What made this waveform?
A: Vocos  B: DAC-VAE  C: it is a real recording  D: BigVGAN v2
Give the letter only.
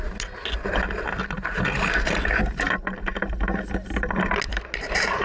C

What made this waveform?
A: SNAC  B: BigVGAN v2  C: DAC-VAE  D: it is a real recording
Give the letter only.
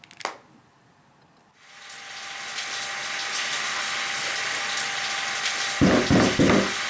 D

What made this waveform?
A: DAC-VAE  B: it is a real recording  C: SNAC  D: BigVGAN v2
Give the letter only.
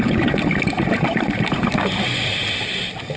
B